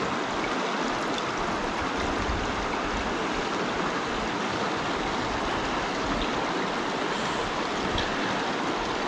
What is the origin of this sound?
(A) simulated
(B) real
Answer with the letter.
B